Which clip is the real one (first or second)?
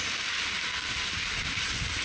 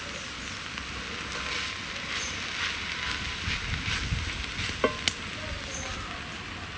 second